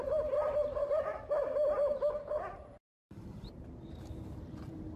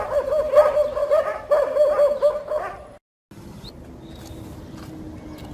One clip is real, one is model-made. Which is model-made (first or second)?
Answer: first